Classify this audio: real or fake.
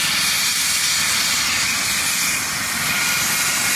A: real